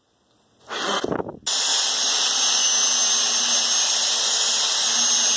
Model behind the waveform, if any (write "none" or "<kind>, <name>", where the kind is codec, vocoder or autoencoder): none